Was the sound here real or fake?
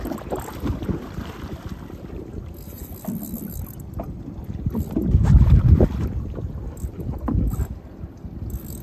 real